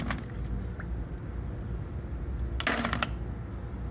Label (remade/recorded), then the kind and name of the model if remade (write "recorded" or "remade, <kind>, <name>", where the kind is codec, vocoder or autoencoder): recorded